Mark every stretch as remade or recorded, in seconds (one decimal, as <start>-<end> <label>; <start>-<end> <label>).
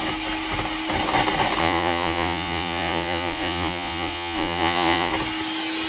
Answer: 0.0-1.6 recorded; 1.6-5.1 remade; 5.1-5.9 recorded